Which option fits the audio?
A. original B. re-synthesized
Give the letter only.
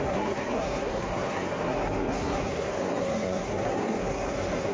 B